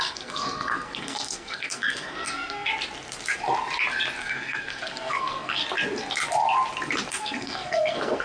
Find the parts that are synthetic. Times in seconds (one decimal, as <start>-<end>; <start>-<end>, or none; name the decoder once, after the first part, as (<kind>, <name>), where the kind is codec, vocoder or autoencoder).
0.0-2.7 (codec, SNAC); 4.2-5.6; 7.1-8.2